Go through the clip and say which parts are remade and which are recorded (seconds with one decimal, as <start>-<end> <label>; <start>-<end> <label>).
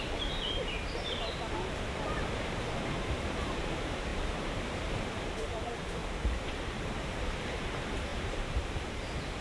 0.0-6.0 remade; 6.0-6.9 recorded; 6.9-9.4 remade